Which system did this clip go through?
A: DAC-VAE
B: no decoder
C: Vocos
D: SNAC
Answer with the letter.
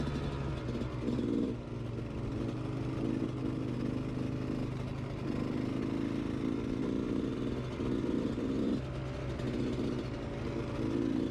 B